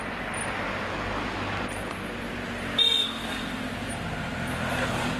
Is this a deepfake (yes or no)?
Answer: no